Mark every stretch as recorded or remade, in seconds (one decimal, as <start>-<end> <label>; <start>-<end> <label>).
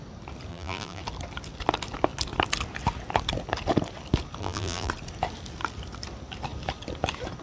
0.0-0.5 recorded; 0.5-1.0 remade; 1.0-4.4 recorded; 4.4-4.9 remade; 4.9-7.4 recorded